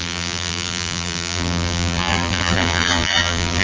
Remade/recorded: remade